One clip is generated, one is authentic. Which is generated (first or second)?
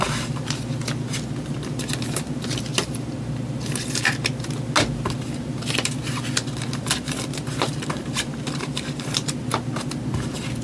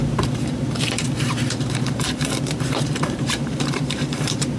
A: second